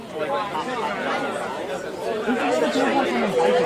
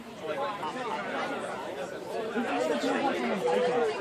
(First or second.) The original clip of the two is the first